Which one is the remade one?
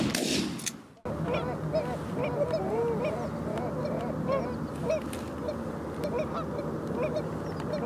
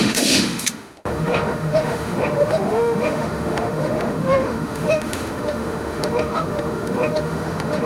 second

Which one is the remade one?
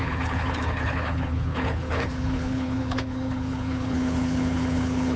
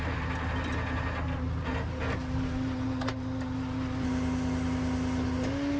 first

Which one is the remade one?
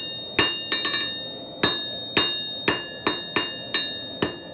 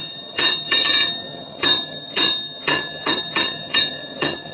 second